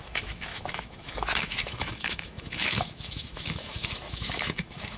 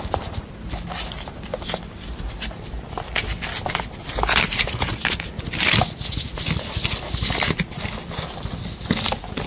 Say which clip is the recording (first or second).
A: second